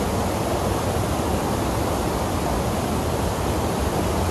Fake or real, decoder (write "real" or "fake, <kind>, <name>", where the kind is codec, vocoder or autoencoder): real